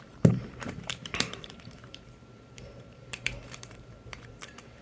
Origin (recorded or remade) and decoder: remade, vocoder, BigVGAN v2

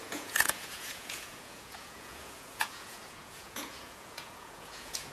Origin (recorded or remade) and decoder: remade, vocoder, Vocos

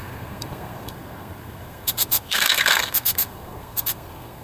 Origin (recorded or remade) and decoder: remade, codec, SNAC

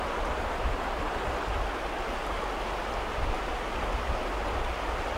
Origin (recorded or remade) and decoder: recorded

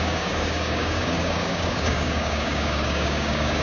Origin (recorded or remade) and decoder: remade, codec, DAC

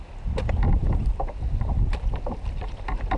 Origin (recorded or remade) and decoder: recorded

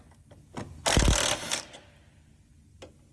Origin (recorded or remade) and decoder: recorded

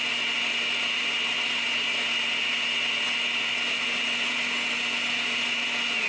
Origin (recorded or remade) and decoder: recorded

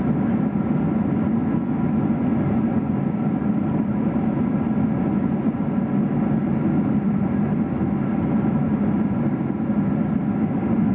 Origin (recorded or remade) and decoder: recorded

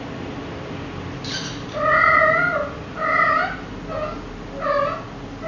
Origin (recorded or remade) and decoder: recorded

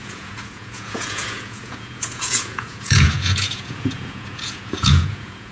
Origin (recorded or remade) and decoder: remade, vocoder, Vocos